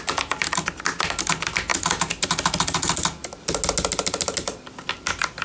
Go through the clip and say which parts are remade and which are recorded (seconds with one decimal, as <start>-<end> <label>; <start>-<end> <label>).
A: 0.0-5.4 recorded